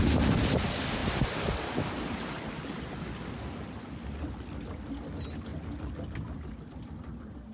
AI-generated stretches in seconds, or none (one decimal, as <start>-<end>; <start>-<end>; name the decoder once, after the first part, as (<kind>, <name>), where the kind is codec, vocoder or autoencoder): 1.0-1.6 (vocoder, BigVGAN v2); 5.5-6.5